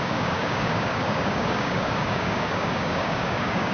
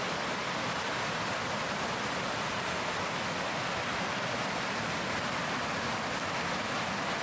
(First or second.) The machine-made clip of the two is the first